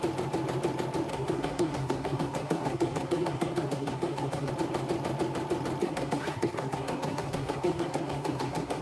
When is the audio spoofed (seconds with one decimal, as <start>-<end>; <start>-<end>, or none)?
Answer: 1.1-4.5; 5.8-8.8